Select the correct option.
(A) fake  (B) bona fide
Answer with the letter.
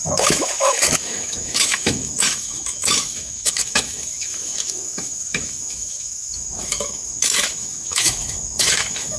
A